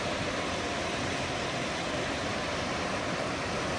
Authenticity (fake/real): real